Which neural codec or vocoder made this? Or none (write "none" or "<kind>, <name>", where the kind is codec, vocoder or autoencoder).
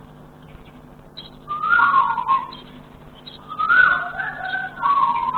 none